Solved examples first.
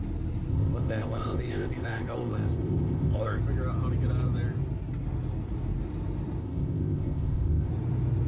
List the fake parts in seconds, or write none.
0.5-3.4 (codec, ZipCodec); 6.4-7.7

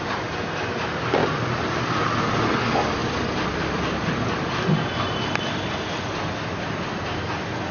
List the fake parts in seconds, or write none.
1.2-1.9 (vocoder, BigVGAN v2); 3.0-6.8

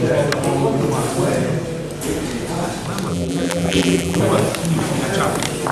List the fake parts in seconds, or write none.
3.1-4.2 (vocoder, BigVGAN v2)

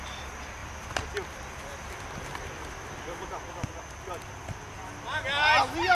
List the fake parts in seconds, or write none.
none